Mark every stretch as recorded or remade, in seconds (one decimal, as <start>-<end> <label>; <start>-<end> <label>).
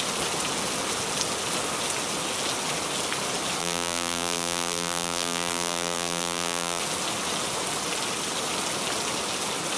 0.0-3.6 recorded; 3.6-6.8 remade; 6.8-9.8 recorded